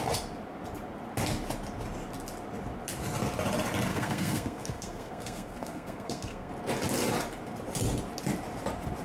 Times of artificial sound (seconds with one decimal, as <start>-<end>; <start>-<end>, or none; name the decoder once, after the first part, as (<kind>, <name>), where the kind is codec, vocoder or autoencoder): 3.9-6.5 (codec, SNAC)